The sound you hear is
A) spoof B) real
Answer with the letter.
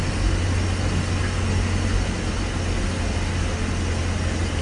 B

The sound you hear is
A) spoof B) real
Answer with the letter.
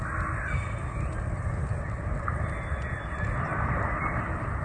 B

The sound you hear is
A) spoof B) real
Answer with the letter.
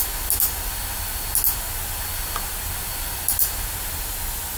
B